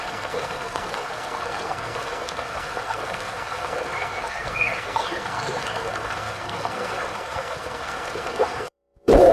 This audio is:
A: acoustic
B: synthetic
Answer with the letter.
B